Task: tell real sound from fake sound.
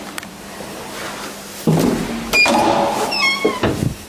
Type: real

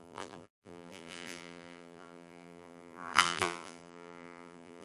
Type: fake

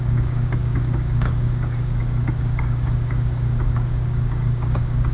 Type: fake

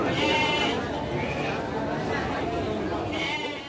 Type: real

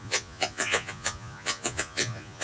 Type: fake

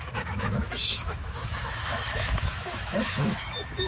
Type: fake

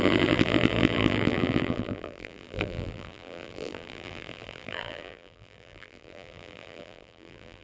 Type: fake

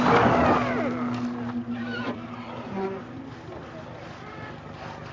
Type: real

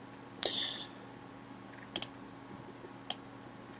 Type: real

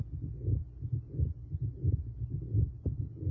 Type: real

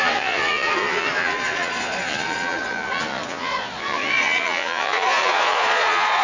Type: fake